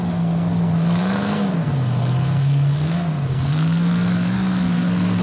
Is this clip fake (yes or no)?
yes